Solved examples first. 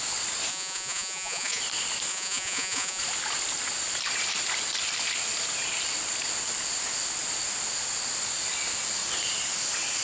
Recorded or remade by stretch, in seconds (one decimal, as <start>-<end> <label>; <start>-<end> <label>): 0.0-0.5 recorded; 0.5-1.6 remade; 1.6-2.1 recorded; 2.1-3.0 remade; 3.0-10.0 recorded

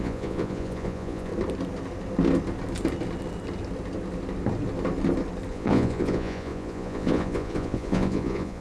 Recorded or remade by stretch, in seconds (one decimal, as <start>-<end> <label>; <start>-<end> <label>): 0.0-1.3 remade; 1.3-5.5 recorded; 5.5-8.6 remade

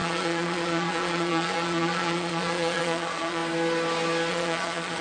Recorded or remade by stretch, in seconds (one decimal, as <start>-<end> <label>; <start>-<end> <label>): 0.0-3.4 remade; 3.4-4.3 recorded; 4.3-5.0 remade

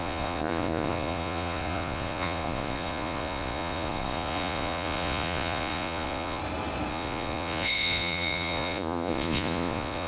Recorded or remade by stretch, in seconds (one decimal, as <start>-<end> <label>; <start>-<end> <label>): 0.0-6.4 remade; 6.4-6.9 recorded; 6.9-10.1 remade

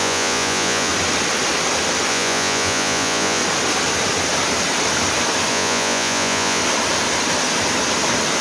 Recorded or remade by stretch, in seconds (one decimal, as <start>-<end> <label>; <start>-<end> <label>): 0.0-0.9 remade; 0.9-2.1 recorded; 2.1-3.4 remade; 3.4-5.5 recorded; 5.5-6.6 remade; 6.6-8.4 recorded

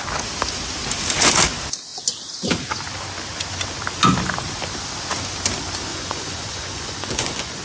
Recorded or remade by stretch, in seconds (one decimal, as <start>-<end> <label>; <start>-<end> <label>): 0.0-5.9 recorded; 5.9-7.6 remade

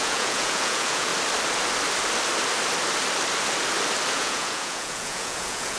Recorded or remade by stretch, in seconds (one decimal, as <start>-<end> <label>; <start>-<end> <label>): 0.0-1.1 remade; 1.1-4.1 recorded; 4.1-5.8 remade